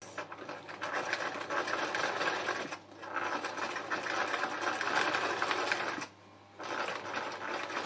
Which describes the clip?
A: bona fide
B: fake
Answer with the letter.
A